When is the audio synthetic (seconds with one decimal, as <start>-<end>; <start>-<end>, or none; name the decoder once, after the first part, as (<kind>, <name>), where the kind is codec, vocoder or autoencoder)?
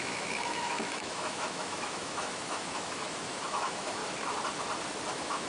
0.0-4.0 (autoencoder, DAC-VAE); 5.1-5.5